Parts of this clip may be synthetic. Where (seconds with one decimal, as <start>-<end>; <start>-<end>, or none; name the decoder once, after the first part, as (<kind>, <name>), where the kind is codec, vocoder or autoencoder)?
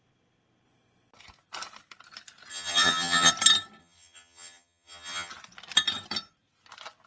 2.5-3.3 (vocoder, HiFi-GAN); 3.8-5.3